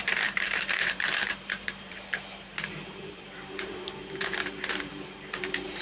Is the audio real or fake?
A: fake